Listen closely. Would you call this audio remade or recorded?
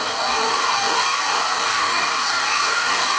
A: remade